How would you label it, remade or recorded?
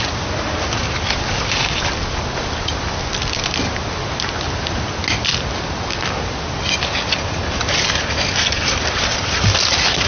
recorded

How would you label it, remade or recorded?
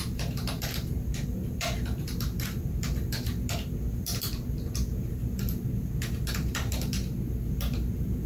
remade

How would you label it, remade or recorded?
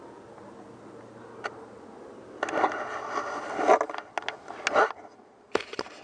recorded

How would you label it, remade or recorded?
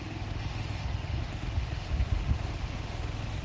remade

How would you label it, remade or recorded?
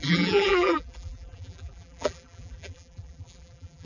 remade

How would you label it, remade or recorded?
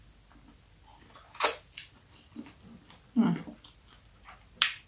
recorded